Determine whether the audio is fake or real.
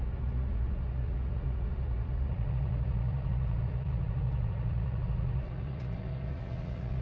fake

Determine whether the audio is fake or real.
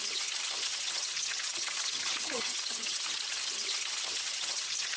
fake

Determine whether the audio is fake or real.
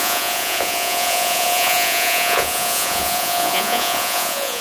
fake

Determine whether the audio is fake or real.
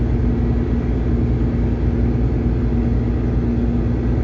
real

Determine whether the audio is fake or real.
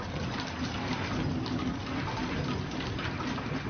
real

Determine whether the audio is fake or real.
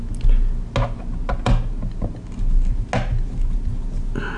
real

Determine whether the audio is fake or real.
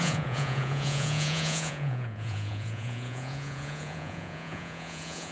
fake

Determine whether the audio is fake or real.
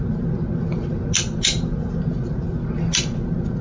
real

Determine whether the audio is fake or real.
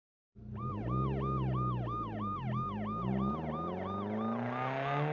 real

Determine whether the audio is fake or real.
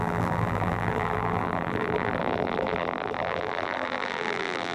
fake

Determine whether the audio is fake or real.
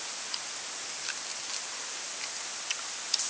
real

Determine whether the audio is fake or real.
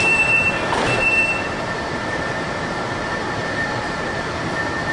fake